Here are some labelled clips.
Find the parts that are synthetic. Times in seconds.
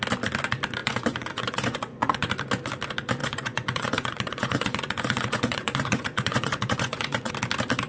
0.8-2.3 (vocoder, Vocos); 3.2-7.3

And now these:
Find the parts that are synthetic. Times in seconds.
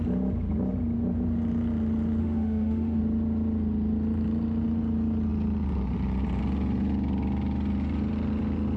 2.2-3.0 (autoencoder, DAC-VAE)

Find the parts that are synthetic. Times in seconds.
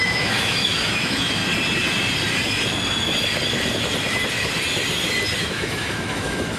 0.0-1.4 (autoencoder, DAC-VAE); 5.4-6.6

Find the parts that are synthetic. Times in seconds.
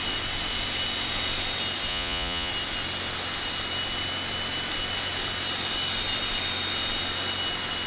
1.9-2.5 (vocoder, Vocos)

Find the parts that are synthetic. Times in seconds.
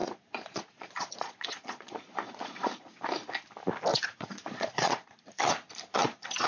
0.0-2.9 (vocoder, Vocos); 3.9-5.4; 6.0-6.5